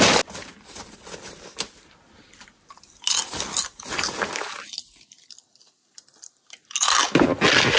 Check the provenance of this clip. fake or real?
real